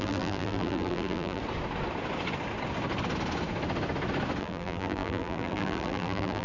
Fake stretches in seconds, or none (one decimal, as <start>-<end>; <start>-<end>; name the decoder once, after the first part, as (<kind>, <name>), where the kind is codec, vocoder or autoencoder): 0.0-1.4 (vocoder, BigVGAN v2); 4.4-6.4